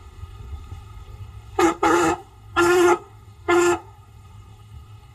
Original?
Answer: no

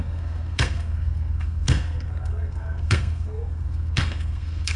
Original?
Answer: no